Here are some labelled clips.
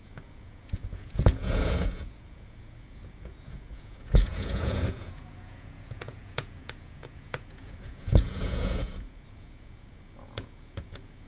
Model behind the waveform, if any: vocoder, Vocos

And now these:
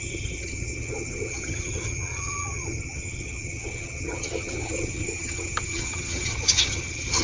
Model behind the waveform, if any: vocoder, HiFi-GAN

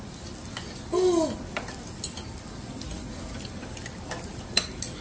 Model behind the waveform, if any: none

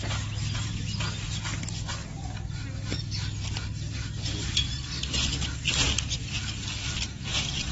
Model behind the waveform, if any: none